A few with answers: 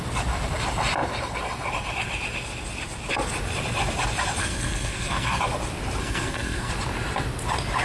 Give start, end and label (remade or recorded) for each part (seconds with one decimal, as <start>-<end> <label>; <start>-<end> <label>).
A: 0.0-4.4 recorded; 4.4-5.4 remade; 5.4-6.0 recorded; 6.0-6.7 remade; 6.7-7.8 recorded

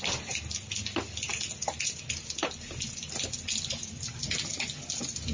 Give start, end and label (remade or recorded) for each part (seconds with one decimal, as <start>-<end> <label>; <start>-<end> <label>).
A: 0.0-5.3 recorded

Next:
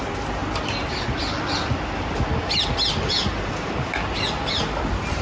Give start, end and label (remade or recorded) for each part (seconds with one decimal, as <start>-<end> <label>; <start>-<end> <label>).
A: 0.0-5.2 recorded

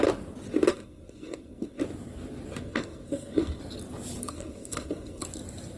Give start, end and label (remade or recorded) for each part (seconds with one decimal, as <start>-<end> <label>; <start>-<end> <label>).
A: 0.0-0.7 recorded; 0.7-1.8 remade; 1.8-2.6 recorded; 2.6-3.6 remade; 3.6-4.2 recorded; 4.2-5.2 remade; 5.2-5.8 recorded